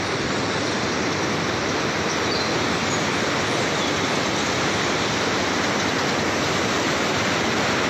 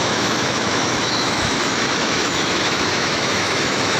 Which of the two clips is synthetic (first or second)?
second